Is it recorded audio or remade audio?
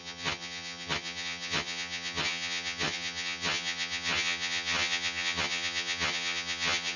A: remade